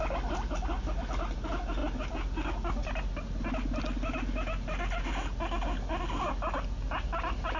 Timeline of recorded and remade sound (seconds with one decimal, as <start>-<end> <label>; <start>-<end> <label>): 0.0-7.6 recorded